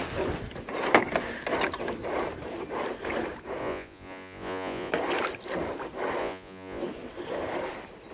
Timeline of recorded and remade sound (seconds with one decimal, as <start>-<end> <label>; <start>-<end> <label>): 0.0-3.6 recorded; 3.6-4.9 remade; 4.9-6.2 recorded; 6.2-6.8 remade; 6.8-8.1 recorded